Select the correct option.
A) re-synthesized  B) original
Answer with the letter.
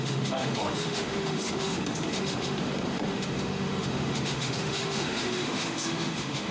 A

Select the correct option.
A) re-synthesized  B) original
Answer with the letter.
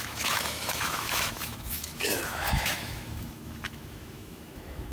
A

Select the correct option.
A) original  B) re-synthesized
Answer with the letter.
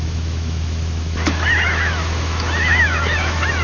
B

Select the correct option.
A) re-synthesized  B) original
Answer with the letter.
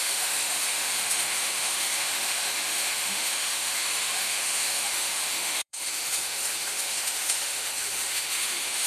A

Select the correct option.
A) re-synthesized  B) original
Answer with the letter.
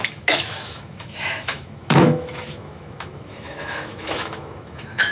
A